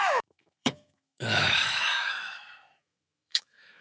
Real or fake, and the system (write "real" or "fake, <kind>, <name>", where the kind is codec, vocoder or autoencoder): fake, autoencoder, DAC-VAE